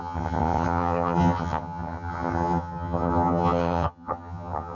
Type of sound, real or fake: fake